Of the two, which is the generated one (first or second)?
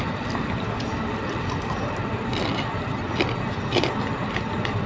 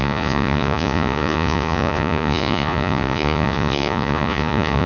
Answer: second